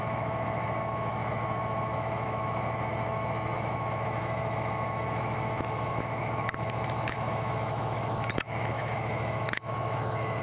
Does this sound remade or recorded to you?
remade